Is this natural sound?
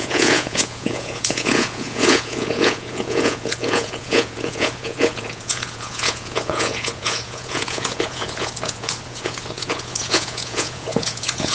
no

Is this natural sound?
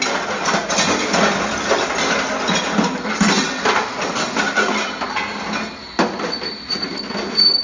yes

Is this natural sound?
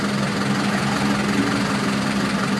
yes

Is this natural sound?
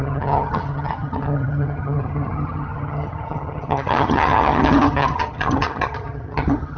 no